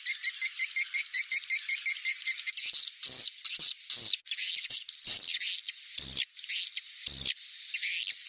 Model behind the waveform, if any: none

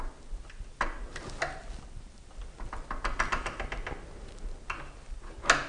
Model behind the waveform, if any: none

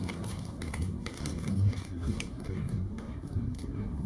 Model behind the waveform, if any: codec, SNAC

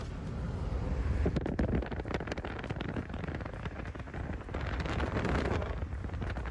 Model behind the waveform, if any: none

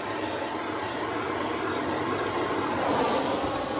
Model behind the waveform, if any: none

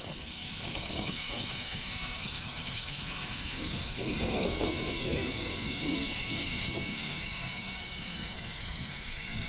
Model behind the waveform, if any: codec, SNAC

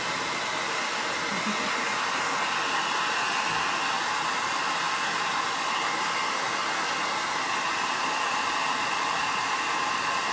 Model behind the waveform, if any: none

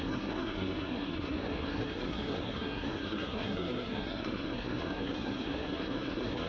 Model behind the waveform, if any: codec, SNAC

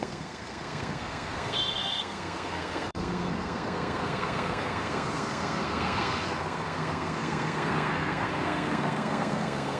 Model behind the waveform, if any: codec, SNAC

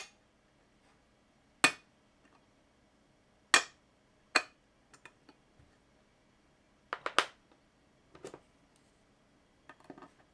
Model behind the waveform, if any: none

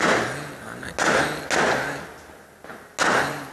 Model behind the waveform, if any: none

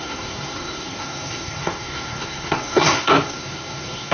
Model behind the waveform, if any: codec, SNAC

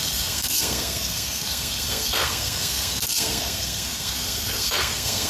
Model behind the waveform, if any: codec, SNAC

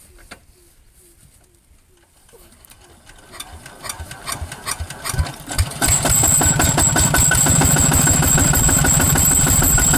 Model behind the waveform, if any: none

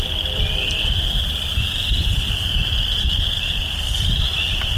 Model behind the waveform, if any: none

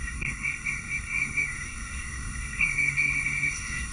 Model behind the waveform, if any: codec, SNAC